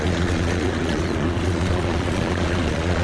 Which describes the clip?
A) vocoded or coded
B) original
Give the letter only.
A